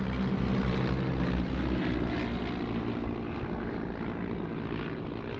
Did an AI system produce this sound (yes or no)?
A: no